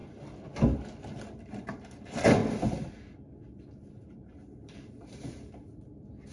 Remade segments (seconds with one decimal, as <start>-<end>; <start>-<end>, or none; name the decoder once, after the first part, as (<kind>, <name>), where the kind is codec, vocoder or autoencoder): 1.0-2.4 (vocoder, BigVGAN v2); 3.9-6.3